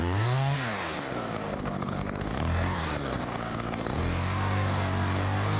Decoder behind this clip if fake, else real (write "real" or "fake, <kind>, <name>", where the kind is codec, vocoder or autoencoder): fake, codec, DAC